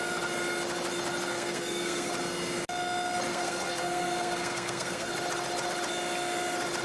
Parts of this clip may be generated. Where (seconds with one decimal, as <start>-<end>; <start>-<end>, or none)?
1.3-2.1; 3.3-5.1